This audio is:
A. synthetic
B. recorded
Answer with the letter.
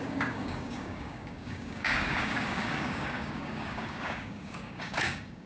A